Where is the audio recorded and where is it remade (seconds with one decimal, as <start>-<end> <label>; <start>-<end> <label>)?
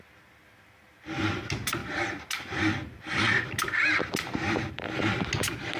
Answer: 0.0-5.8 recorded